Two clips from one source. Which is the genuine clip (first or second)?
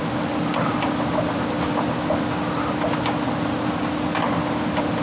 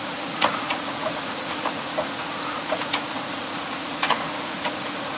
first